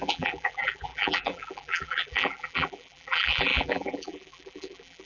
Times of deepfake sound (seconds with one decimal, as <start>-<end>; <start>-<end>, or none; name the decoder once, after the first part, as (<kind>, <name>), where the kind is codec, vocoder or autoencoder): 0.0-5.1 (vocoder, BigVGAN v2)